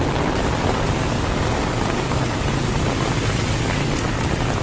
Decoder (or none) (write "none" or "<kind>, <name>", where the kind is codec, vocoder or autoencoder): none